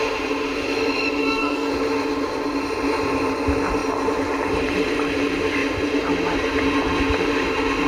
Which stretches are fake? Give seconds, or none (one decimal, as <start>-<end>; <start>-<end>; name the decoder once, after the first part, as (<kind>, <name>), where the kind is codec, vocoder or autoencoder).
1.2-1.7 (codec, SNAC)